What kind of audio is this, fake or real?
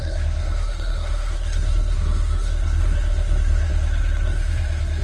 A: fake